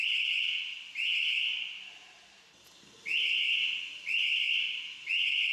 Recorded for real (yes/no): yes